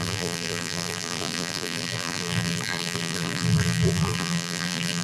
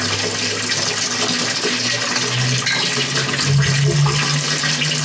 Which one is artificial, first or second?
first